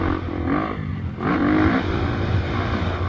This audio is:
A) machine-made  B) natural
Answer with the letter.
B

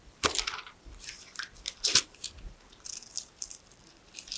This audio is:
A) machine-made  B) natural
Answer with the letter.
A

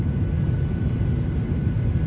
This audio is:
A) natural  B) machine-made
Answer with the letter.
A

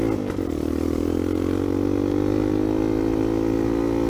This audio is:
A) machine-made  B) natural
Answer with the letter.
B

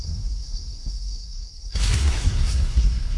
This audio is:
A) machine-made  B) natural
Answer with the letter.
A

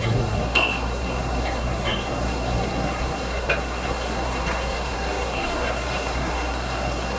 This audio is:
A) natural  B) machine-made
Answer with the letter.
B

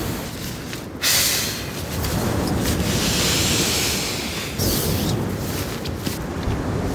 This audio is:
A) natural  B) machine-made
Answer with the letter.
A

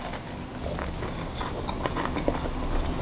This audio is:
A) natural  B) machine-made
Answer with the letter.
A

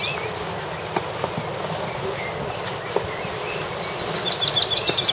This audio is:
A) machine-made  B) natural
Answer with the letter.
B